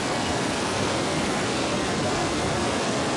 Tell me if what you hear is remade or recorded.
remade